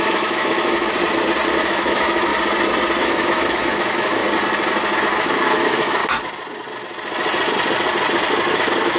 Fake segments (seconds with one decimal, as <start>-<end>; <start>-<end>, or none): 0.0-1.0; 1.6-2.3; 3.0-4.2; 5.0-6.0; 8.5-9.0